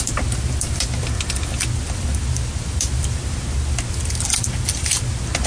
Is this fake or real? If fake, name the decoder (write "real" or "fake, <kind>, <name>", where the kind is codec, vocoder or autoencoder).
real